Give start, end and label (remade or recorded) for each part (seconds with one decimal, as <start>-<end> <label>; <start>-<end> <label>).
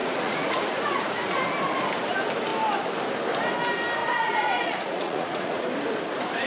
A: 0.0-1.4 remade; 1.4-4.0 recorded; 4.0-5.6 remade; 5.6-6.5 recorded